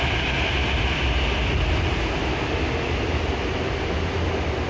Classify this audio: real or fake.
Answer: real